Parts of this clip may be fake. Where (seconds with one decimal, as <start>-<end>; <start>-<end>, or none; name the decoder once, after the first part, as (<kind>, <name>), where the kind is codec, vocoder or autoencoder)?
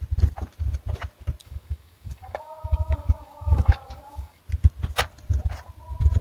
1.4-4.4 (codec, DAC)